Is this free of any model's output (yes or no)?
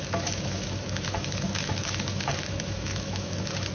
no